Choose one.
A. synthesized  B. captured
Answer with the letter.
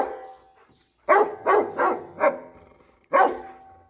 B